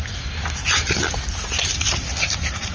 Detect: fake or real fake